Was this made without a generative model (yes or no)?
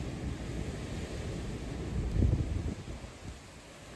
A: yes